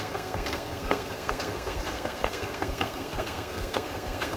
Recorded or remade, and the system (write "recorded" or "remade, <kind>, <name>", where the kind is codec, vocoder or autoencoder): remade, codec, SNAC